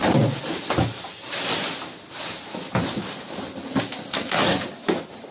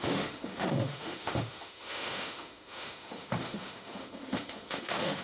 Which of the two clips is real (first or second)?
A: first